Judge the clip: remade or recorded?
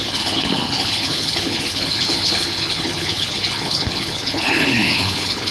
remade